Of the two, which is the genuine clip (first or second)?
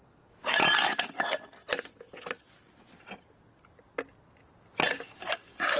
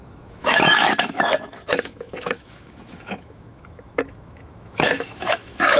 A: first